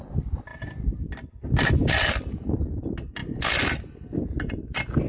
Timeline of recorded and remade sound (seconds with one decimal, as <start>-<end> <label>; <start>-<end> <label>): 0.0-5.1 recorded